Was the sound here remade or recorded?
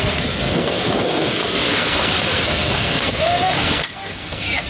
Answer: remade